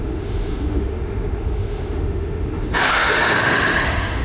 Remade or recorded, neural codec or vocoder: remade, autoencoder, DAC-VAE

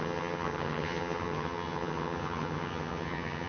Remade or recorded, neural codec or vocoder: remade, vocoder, HiFi-GAN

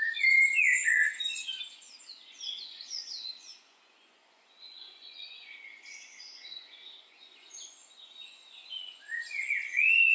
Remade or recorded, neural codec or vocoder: remade, vocoder, Vocos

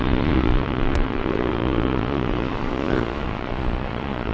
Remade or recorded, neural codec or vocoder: remade, vocoder, Vocos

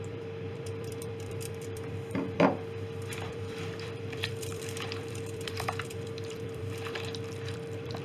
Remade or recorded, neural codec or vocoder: remade, vocoder, BigVGAN v2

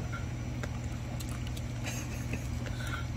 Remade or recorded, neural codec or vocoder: recorded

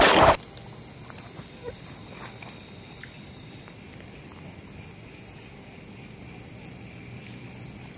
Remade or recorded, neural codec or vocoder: recorded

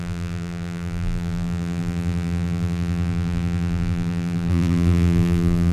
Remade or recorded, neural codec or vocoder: remade, vocoder, BigVGAN v2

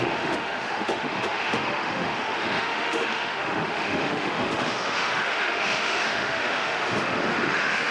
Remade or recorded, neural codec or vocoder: remade, autoencoder, DAC-VAE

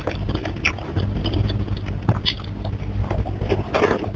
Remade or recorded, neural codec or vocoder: recorded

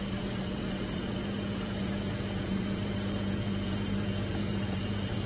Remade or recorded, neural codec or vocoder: remade, vocoder, Vocos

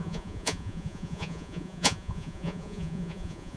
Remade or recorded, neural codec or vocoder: remade, vocoder, Vocos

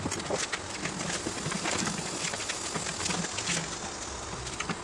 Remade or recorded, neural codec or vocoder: recorded